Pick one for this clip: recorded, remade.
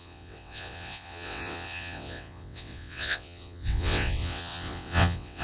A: remade